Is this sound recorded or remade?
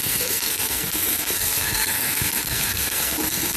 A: remade